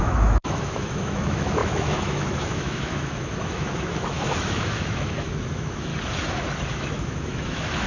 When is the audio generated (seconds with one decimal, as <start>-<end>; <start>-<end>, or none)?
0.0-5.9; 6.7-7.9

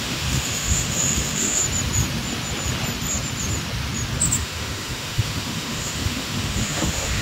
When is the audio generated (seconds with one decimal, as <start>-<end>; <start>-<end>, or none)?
0.0-1.6; 4.4-7.2

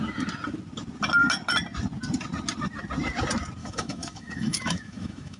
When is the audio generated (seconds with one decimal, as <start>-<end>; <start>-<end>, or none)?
3.6-5.4

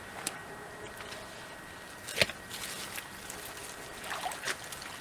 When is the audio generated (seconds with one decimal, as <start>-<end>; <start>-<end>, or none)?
none